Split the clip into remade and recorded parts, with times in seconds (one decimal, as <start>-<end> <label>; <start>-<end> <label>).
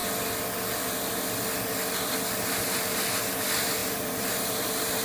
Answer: 0.0-2.4 recorded; 2.4-5.0 remade